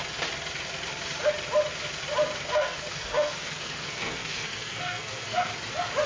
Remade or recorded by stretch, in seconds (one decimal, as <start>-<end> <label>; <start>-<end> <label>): 0.0-2.5 recorded; 2.5-5.5 remade; 5.5-6.1 recorded